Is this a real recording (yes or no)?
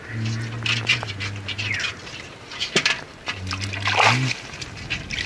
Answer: yes